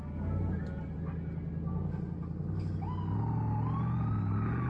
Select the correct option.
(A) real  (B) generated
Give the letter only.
A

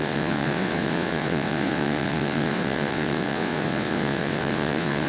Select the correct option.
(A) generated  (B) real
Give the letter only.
A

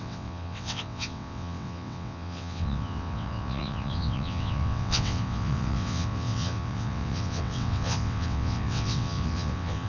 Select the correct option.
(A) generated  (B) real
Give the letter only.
A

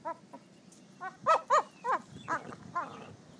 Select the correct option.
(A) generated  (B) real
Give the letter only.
B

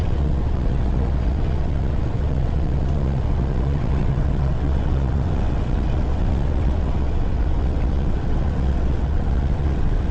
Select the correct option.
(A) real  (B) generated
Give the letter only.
B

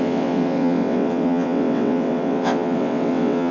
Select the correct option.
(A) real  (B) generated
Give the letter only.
B